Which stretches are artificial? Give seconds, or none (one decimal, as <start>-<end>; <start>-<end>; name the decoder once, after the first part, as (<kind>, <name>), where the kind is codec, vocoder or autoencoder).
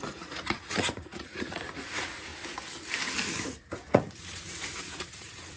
0.0-2.3 (vocoder, Vocos); 3.6-5.6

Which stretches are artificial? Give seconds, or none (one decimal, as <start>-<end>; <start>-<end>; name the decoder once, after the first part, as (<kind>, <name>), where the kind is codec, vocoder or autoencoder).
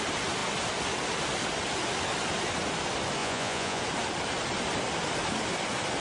3.2-3.8 (vocoder, Vocos)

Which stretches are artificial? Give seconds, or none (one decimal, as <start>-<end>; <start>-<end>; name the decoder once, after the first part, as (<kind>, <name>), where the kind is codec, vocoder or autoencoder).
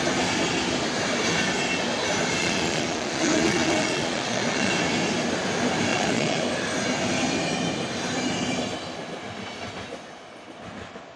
2.4-4.7 (vocoder, Vocos); 5.9-6.4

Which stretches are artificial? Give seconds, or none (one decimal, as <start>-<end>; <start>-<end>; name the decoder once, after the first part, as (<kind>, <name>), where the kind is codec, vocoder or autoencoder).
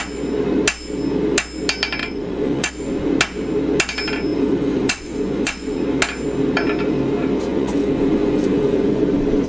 2.0-2.7 (vocoder, Vocos); 4.3-5.8; 7.5-9.0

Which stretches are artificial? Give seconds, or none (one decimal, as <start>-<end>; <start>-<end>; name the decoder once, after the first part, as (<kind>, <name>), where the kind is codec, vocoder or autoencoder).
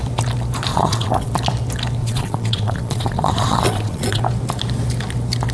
0.7-1.3 (vocoder, Vocos); 2.0-4.2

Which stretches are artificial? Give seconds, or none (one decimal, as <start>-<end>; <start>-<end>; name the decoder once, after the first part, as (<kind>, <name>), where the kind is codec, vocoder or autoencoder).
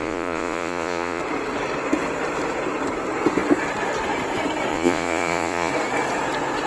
0.0-1.2 (vocoder, Vocos); 4.7-5.7